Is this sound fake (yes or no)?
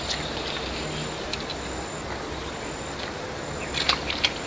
no